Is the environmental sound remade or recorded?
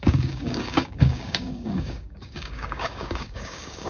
remade